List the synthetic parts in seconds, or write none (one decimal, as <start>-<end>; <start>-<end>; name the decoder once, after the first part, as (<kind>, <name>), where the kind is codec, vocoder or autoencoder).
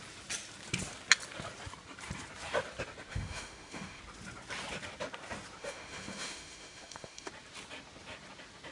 3.1-4.0 (autoencoder, DAC-VAE); 5.6-7.3